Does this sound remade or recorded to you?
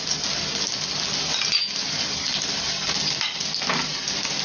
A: recorded